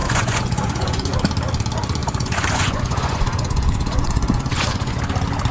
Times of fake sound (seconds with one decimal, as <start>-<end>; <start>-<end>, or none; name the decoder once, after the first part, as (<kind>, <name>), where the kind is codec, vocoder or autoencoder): 0.0-1.1 (vocoder, Vocos); 2.0-5.0